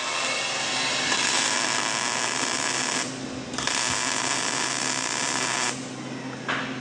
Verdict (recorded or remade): recorded